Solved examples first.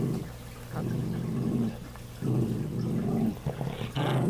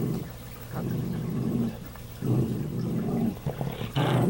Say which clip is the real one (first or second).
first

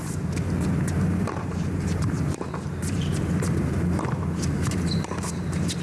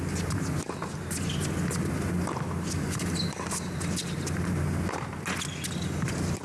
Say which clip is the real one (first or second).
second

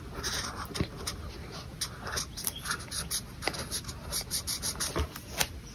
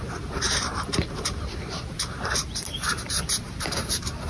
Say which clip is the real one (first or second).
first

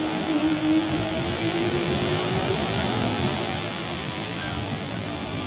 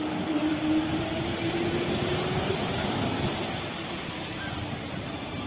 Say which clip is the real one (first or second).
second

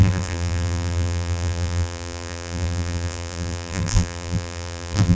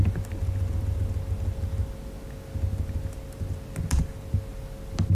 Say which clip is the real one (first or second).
second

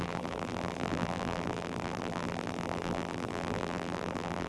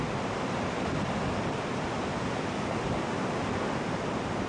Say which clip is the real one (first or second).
second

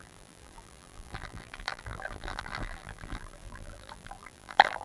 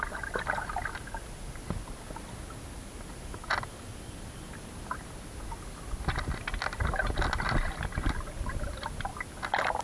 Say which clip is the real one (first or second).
second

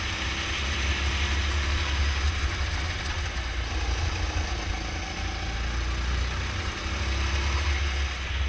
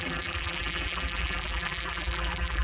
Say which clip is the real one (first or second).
first